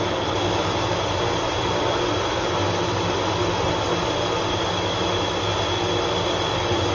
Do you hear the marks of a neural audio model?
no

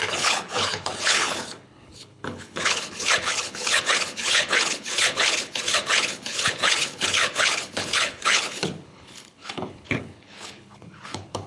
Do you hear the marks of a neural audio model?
yes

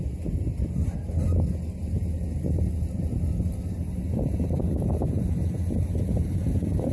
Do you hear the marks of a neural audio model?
no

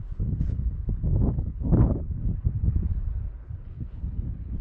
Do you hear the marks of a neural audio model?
yes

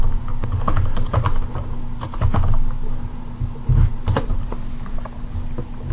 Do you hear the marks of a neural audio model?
no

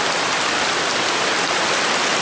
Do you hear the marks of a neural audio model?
no